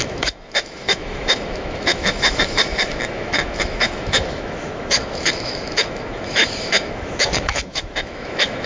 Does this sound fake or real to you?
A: fake